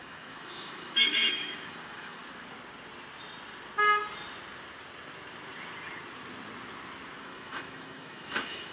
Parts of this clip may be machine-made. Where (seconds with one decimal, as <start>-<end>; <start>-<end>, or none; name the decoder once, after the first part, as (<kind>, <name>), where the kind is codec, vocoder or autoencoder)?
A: 0.0-2.2 (autoencoder, DAC-VAE); 7.2-8.7